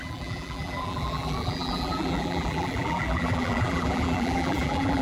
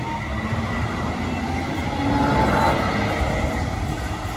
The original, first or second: second